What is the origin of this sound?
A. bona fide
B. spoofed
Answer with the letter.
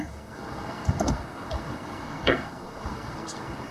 B